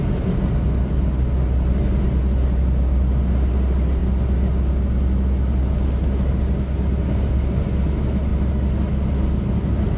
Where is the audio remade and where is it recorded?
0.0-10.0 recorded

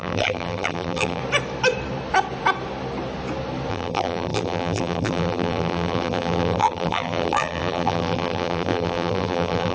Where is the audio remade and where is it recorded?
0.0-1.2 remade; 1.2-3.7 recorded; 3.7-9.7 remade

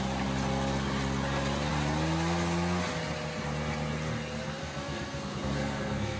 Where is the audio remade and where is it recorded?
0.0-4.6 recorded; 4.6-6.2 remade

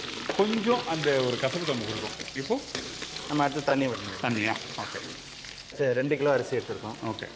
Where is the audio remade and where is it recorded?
0.0-2.2 recorded; 2.2-2.9 remade; 2.9-3.7 recorded; 3.7-6.2 remade; 6.2-7.4 recorded

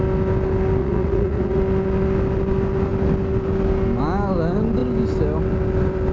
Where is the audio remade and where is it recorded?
0.0-0.8 recorded; 0.8-1.6 remade; 1.6-6.1 recorded

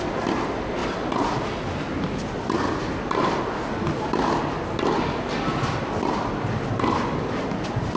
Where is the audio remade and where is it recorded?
0.0-8.0 recorded

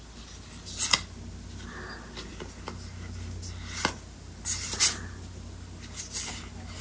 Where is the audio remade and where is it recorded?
0.0-6.8 recorded

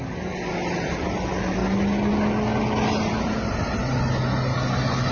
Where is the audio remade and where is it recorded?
0.0-5.1 recorded